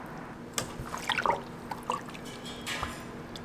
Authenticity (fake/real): real